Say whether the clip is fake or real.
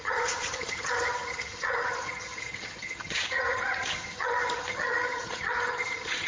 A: fake